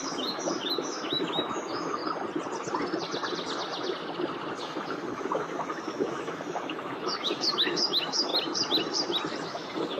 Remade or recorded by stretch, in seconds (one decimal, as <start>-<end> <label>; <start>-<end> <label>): 0.0-2.0 remade; 2.0-4.6 recorded; 4.6-8.3 remade; 8.3-9.4 recorded; 9.4-10.0 remade